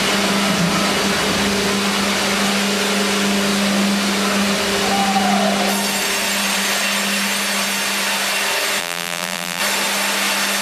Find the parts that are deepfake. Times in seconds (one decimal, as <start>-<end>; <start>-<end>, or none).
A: 8.8-9.6